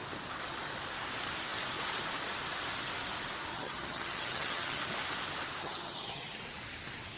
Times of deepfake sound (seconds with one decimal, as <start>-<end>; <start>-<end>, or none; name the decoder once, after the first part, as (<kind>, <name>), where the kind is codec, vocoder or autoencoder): 3.5-4.8 (vocoder, HiFi-GAN); 5.6-6.4

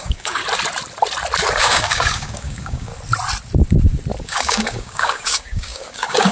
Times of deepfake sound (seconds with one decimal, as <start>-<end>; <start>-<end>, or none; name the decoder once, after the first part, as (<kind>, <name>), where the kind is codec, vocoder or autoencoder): 0.0-0.4 (codec, DAC); 1.6-2.9; 4.2-6.3

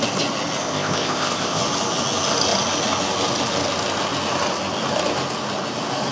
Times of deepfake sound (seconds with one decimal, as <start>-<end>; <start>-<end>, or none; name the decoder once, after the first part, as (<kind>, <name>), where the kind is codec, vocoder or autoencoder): 0.6-1.6 (codec, ZipCodec)

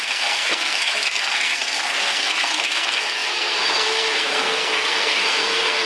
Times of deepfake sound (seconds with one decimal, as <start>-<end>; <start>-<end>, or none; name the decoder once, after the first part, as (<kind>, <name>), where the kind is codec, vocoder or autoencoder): 0.0-5.9 (codec, SNAC)

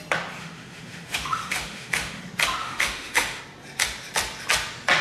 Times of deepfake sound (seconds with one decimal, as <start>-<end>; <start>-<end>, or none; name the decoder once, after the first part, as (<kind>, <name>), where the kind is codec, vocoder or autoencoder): 0.4-2.2 (autoencoder, DAC-VAE); 2.6-3.4

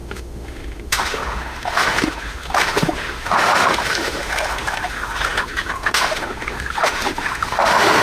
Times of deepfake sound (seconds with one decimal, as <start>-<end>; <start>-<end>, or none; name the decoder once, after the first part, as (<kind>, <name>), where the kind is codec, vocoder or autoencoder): 0.0-8.0 (autoencoder, DAC-VAE)